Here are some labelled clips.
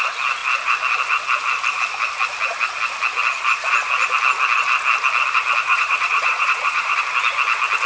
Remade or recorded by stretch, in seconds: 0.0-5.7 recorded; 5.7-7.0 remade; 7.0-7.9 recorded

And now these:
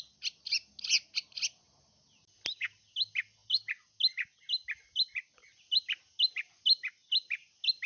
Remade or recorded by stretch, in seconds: 0.0-7.9 recorded

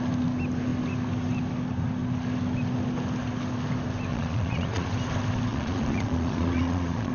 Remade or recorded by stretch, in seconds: 0.0-4.1 recorded; 4.1-4.9 remade; 4.9-5.5 recorded; 5.5-7.1 remade

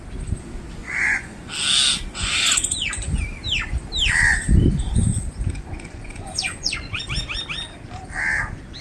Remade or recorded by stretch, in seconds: 0.0-0.8 recorded; 0.8-1.5 remade; 1.5-2.1 recorded; 2.1-3.2 remade; 3.2-5.1 recorded; 5.1-7.0 remade; 7.0-8.8 recorded

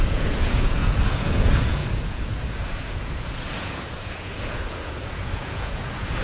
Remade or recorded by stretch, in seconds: 0.0-6.2 remade

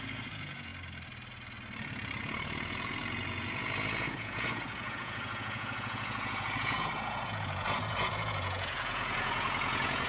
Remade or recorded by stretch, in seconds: 0.0-0.7 remade; 0.7-2.2 recorded; 2.2-10.1 remade

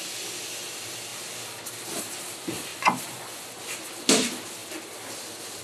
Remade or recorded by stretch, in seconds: 0.0-2.7 recorded; 2.7-3.6 remade; 3.6-5.6 recorded